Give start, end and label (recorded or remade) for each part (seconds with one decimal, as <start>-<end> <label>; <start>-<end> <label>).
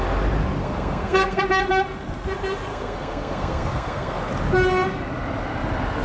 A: 0.0-0.6 recorded; 0.6-1.4 remade; 1.4-2.7 recorded; 2.7-4.3 remade; 4.3-6.0 recorded